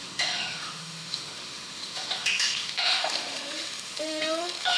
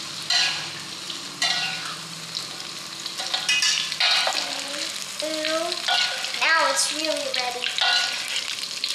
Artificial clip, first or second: first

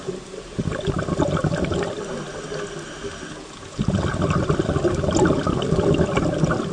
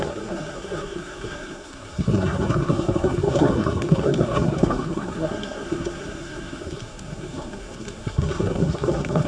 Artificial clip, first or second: second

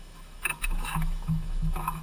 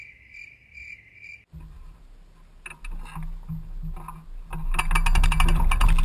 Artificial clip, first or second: first